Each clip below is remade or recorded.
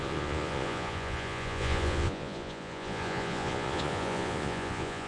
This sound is remade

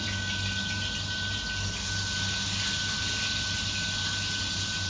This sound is recorded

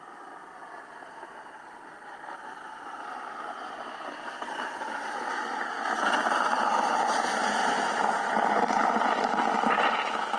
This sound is recorded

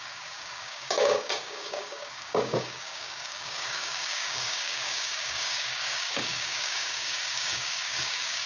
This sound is remade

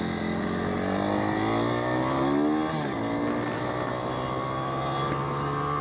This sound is recorded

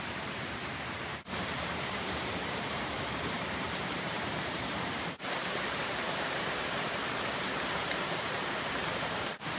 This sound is remade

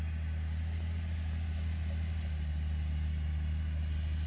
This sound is recorded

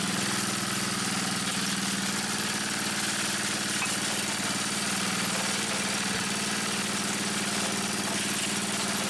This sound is recorded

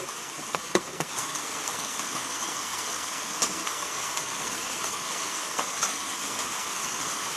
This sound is remade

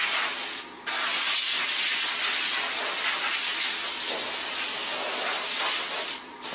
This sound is recorded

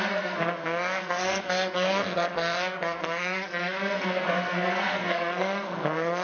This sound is remade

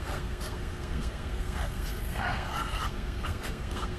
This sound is remade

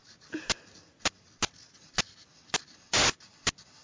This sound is recorded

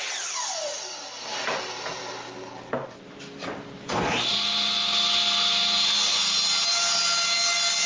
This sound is recorded